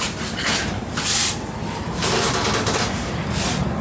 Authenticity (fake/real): real